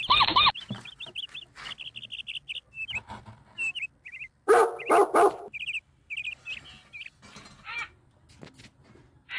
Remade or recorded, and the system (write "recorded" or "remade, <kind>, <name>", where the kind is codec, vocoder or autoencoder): recorded